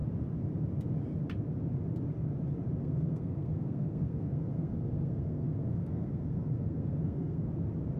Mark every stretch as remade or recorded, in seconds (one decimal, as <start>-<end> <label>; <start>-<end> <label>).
0.0-2.8 recorded; 2.8-7.5 remade; 7.5-8.0 recorded